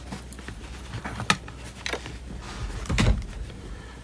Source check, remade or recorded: recorded